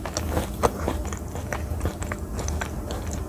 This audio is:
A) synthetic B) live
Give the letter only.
B